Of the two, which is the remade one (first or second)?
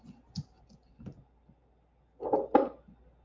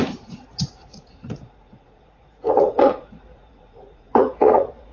second